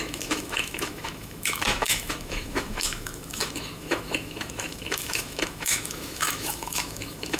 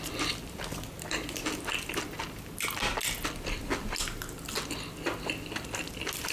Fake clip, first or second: first